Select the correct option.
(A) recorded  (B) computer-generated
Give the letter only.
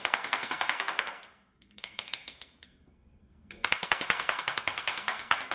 B